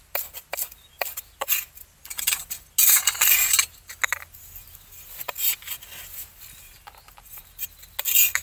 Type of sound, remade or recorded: recorded